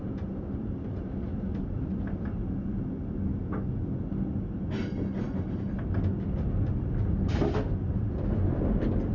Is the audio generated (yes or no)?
no